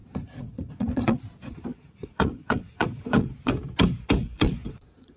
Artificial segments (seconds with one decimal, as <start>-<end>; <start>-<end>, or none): 0.0-1.2; 1.7-3.5; 4.2-5.2